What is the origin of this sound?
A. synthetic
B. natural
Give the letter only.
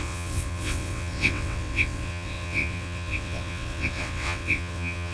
A